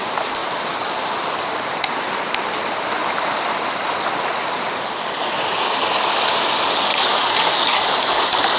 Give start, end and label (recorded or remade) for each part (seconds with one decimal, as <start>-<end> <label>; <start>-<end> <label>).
0.0-6.9 recorded; 6.9-8.2 remade; 8.2-8.6 recorded